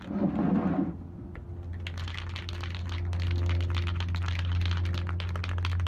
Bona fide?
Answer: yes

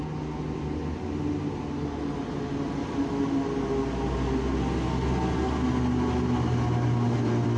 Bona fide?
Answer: yes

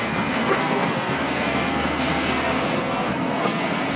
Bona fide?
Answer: no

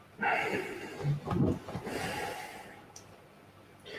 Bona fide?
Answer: yes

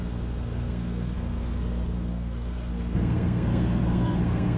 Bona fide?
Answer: no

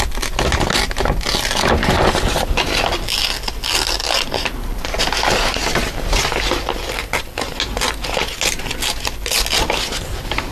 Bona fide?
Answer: yes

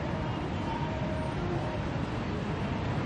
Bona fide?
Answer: yes